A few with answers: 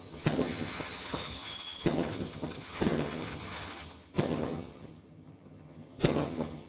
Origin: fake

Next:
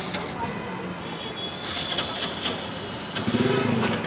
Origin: real